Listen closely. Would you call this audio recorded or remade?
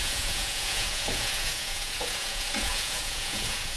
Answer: remade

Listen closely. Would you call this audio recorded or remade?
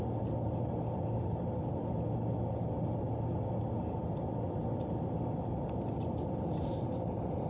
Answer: recorded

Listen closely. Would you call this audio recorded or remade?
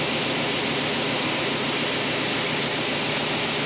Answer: recorded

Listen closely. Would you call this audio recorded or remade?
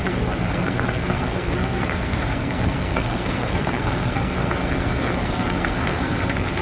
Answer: remade